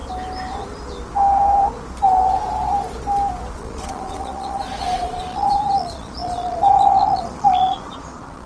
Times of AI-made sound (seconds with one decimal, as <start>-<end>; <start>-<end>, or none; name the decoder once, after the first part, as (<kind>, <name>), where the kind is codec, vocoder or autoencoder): 3.5-8.5 (vocoder, Vocos)